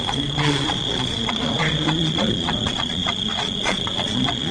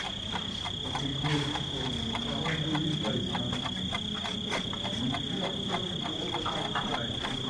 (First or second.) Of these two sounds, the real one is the second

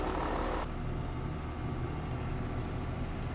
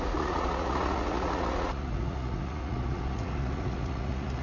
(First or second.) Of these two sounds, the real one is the first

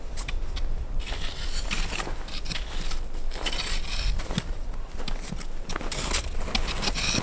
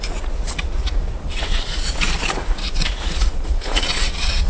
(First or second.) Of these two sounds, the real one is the first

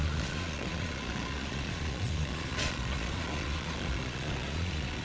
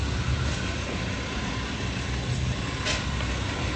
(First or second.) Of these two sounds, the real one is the second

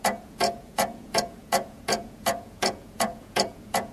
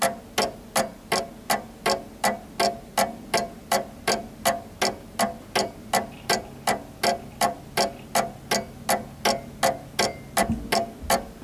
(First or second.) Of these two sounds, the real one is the second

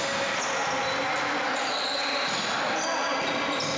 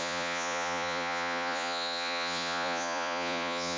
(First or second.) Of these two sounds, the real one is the first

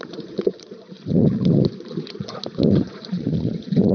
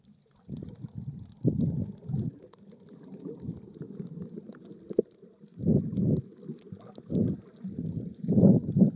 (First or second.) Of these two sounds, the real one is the second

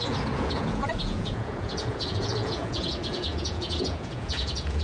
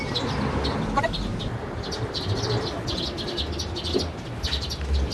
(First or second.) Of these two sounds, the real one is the second